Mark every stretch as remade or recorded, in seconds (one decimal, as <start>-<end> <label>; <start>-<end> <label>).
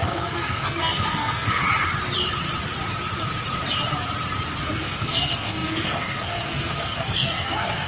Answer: 0.0-1.6 remade; 1.6-4.6 recorded; 4.6-7.9 remade